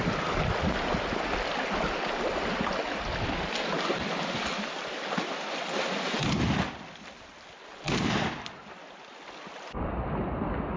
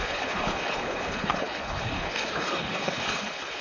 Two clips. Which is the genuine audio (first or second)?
first